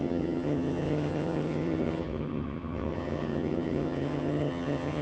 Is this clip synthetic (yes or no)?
yes